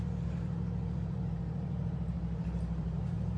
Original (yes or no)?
no